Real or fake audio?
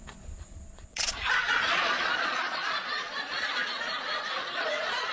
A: fake